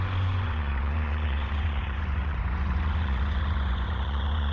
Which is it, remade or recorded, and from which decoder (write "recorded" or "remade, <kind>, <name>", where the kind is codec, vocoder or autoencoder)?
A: remade, vocoder, Vocos